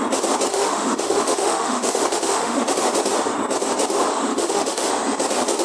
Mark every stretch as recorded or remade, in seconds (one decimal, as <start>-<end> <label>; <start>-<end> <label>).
0.0-0.5 recorded; 0.5-2.7 remade; 2.7-4.3 recorded; 4.3-4.9 remade; 4.9-5.6 recorded